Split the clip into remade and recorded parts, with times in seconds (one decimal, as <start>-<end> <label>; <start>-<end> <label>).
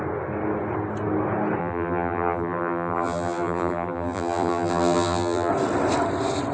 0.0-1.6 recorded; 1.6-5.5 remade; 5.5-6.5 recorded